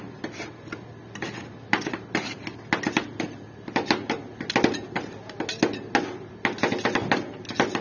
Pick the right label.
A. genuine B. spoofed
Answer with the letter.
A